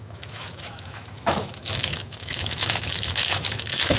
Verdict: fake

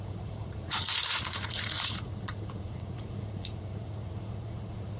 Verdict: fake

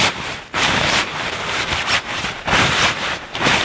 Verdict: fake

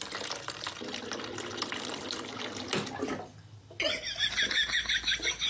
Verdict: real